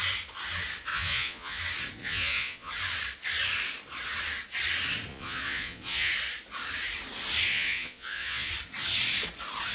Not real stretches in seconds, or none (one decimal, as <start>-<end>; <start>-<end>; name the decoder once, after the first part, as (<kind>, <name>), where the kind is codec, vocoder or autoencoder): 0.9-1.6 (vocoder, Vocos); 2.0-2.7; 5.1-6.1; 7.5-8.5